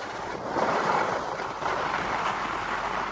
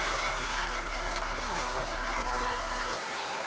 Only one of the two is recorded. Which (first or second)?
first